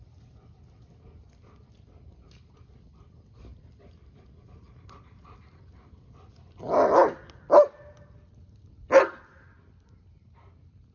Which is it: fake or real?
real